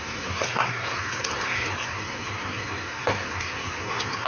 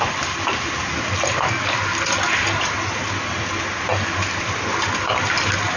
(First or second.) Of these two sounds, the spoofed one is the first